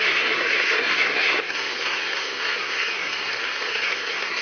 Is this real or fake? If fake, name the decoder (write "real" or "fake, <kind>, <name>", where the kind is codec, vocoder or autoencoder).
fake, codec, SNAC